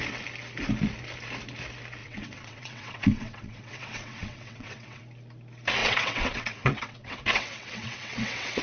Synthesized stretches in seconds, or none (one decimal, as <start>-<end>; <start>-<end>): 2.0-5.0; 5.8-8.6